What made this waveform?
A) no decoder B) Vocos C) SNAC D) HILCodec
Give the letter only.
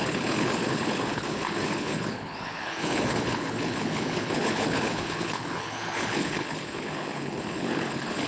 D